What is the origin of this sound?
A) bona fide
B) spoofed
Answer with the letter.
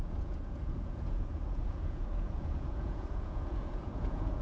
B